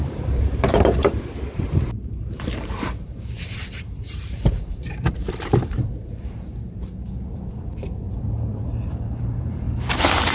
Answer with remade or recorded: remade